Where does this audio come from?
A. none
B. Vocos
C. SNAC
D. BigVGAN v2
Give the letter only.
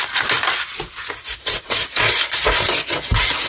D